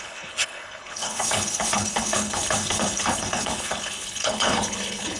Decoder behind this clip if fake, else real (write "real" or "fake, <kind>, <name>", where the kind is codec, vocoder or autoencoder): fake, codec, HILCodec